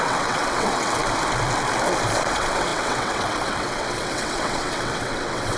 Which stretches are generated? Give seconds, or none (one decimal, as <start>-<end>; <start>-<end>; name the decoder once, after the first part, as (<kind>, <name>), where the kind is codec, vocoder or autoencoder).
0.0-1.0 (vocoder, WaveNeXt); 2.3-5.6